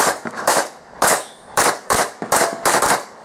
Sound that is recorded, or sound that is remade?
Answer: remade